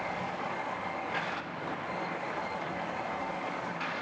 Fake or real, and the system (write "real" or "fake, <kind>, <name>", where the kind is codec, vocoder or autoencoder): fake, codec, DAC